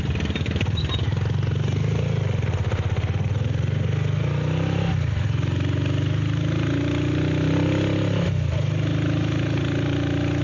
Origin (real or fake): real